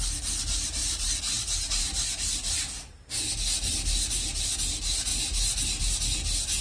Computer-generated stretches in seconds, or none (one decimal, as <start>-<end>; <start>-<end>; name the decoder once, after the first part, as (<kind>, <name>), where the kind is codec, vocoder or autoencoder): 0.8-3.1 (vocoder, BigVGAN v2)